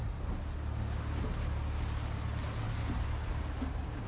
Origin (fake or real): real